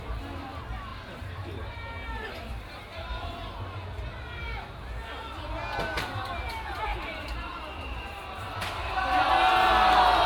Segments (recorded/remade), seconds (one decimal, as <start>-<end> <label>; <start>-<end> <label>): 0.0-0.9 recorded; 0.9-1.7 remade; 1.7-2.5 recorded; 2.5-3.3 remade; 3.3-6.9 recorded; 6.9-9.3 remade; 9.3-10.3 recorded